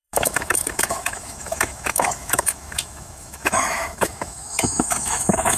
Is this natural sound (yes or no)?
no